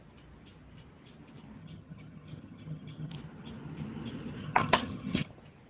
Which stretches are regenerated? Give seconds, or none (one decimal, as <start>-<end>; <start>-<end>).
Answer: 1.6-3.1; 4.4-5.3